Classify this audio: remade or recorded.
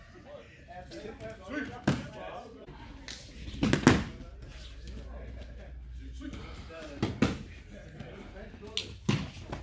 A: recorded